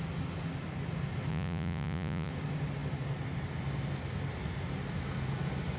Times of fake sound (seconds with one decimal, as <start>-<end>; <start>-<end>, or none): 1.3-2.3

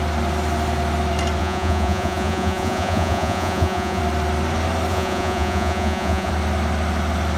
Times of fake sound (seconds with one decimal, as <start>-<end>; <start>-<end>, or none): 1.4-4.0; 4.9-6.3

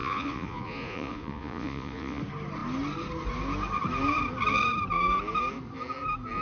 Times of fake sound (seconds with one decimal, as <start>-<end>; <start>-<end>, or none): 0.0-2.2

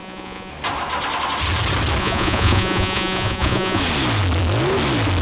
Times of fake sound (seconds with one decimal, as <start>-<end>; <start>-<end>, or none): 0.0-0.5; 2.0-3.8

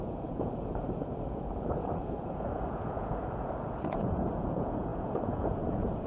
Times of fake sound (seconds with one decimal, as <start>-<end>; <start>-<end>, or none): 0.0-6.1

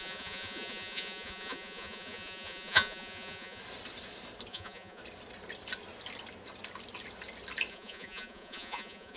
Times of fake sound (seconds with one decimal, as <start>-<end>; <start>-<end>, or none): 0.0-3.6; 4.5-5.0; 7.7-9.2

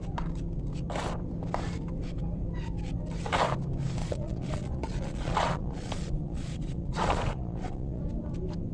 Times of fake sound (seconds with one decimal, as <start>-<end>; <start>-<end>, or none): 4.0-8.0